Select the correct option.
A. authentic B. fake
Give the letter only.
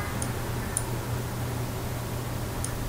A